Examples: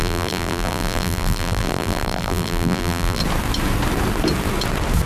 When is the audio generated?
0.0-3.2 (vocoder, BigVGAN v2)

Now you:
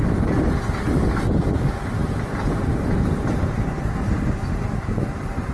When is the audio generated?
1.1-5.5 (vocoder, BigVGAN v2)

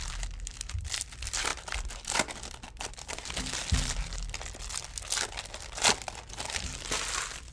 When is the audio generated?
0.0-7.5 (vocoder, BigVGAN v2)